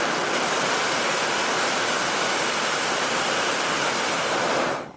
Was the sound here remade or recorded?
recorded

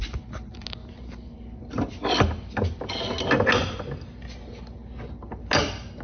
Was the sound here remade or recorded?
recorded